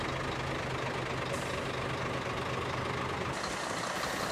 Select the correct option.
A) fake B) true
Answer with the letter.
B